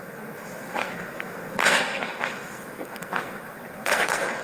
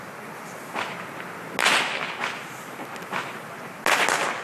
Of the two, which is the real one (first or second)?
second